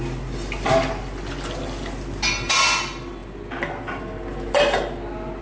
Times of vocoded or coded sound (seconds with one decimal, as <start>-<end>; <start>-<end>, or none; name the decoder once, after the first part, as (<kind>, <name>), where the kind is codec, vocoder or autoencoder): none